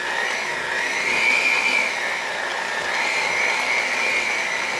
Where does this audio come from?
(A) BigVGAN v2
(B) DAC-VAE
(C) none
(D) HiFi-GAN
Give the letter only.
C